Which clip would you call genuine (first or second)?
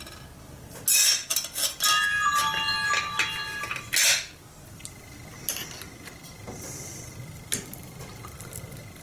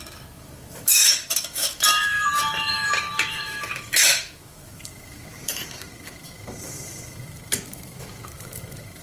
first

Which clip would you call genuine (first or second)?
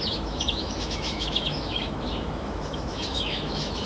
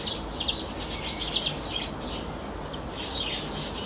second